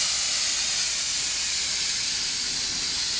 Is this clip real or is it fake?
real